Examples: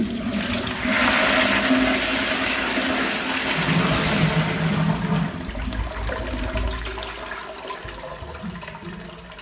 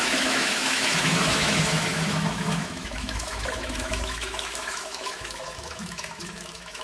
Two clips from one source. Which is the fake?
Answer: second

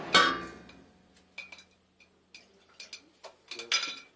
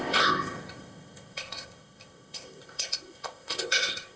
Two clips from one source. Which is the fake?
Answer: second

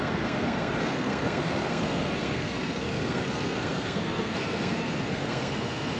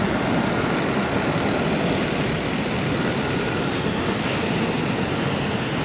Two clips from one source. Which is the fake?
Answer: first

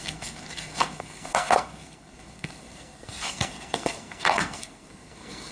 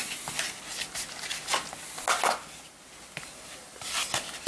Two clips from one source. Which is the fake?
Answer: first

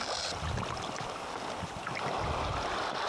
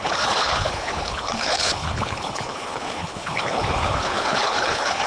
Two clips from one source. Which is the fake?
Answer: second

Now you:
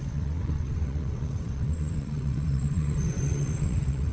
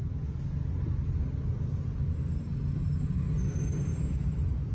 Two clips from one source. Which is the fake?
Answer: first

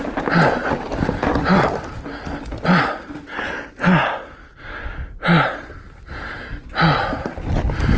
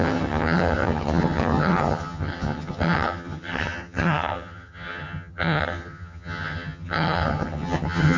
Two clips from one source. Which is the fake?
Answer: second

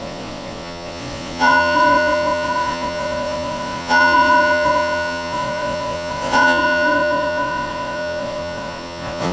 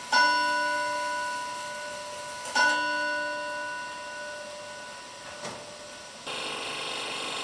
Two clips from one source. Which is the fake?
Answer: first